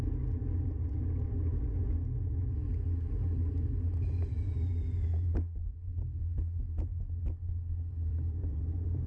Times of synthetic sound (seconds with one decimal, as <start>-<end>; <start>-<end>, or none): none